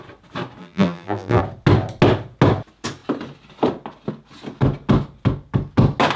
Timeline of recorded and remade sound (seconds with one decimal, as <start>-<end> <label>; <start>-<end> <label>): 0.0-0.6 recorded; 0.6-1.4 remade; 1.4-6.2 recorded